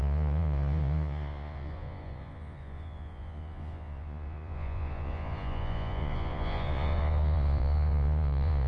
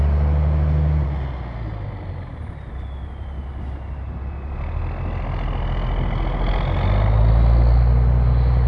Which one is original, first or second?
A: second